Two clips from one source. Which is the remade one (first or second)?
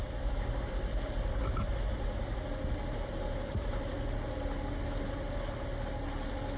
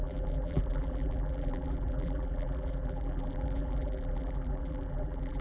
second